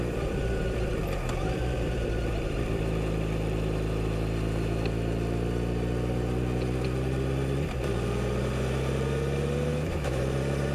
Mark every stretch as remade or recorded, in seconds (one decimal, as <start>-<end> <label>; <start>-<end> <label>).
0.0-9.7 recorded; 9.7-10.2 remade; 10.2-10.7 recorded